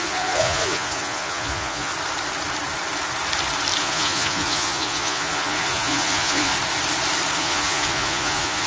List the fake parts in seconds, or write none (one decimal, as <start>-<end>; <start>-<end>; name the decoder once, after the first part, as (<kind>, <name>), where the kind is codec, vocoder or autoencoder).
0.0-1.9 (vocoder, Vocos); 3.8-6.5; 7.4-8.7